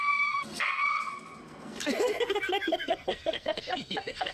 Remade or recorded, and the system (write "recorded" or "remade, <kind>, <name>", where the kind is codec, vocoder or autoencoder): remade, codec, SNAC